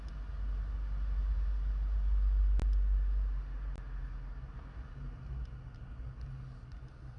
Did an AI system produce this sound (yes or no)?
no